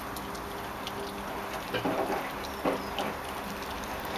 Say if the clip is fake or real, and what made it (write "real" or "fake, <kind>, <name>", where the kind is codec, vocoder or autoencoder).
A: real